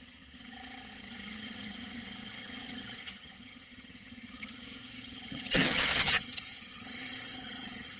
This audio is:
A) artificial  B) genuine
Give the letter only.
A